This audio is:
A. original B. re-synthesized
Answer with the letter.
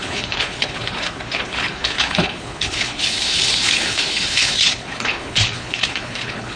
B